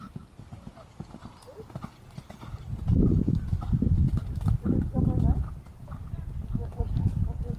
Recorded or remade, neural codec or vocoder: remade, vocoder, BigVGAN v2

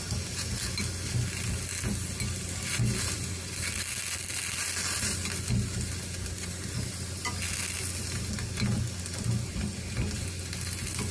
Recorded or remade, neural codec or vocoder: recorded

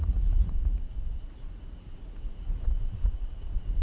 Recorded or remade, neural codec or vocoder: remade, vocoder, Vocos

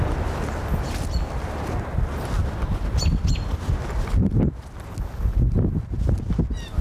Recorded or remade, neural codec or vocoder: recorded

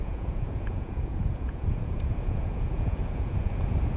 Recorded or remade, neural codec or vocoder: remade, vocoder, Vocos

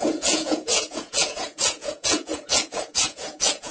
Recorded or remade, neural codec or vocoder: remade, vocoder, Vocos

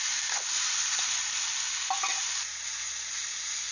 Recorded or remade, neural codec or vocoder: recorded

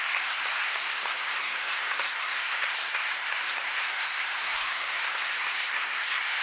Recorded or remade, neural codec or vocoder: remade, codec, SNAC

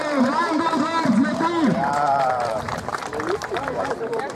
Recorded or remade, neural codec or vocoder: remade, vocoder, BigVGAN v2